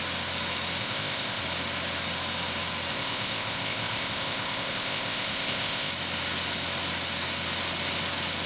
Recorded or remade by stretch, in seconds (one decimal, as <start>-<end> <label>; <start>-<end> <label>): 0.0-0.8 recorded; 0.8-1.4 remade; 1.4-2.9 recorded; 2.9-5.9 remade; 5.9-8.5 recorded